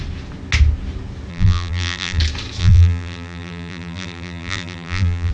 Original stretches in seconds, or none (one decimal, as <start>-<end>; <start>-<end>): 0.0-1.3; 2.2-2.6